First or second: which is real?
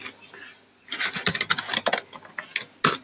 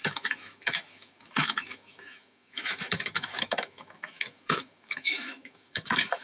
first